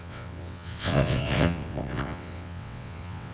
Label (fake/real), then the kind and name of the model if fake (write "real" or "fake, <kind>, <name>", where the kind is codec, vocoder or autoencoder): fake, vocoder, WaveNeXt